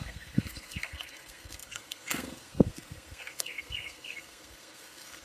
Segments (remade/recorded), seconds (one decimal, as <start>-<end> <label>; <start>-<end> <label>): 0.0-5.2 remade

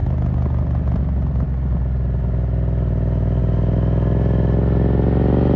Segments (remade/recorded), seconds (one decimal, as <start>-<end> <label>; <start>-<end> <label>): 0.0-5.6 recorded

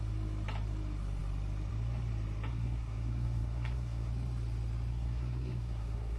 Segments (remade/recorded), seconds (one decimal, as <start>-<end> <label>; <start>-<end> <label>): 0.0-2.5 recorded; 2.5-4.1 remade; 4.1-4.9 recorded; 4.9-6.2 remade

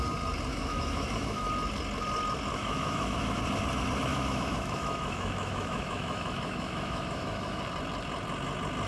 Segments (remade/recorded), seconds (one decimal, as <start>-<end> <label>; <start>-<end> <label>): 0.0-0.5 recorded; 0.5-1.5 remade; 1.5-2.5 recorded; 2.5-3.4 remade; 3.4-4.1 recorded; 4.1-7.6 remade; 7.6-8.9 recorded

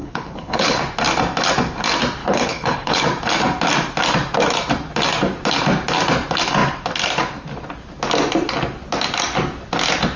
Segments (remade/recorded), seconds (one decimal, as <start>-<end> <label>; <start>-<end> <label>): 0.0-0.8 remade; 0.8-2.2 recorded; 2.2-3.0 remade; 3.0-10.2 recorded